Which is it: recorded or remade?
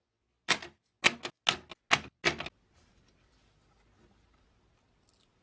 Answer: recorded